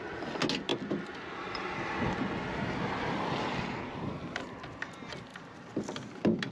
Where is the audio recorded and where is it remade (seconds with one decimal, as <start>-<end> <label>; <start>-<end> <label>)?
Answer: 0.0-6.5 recorded

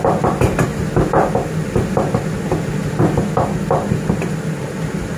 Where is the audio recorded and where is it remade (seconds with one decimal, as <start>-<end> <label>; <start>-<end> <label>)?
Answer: 0.0-5.2 remade

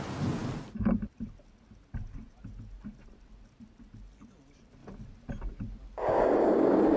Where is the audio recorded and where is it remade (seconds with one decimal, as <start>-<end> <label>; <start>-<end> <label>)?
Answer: 0.0-7.0 recorded